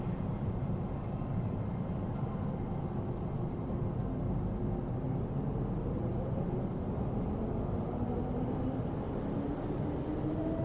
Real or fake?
real